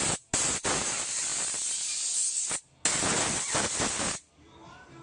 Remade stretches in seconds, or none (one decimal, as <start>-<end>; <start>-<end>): none